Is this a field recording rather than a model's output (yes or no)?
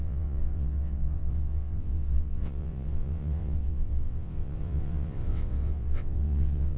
no